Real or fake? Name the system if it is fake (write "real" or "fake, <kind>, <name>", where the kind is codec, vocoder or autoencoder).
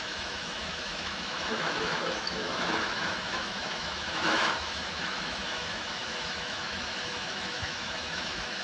fake, autoencoder, DAC-VAE